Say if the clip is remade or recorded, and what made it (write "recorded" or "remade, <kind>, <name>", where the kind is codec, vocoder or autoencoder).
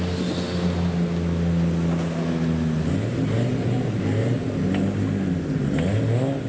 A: recorded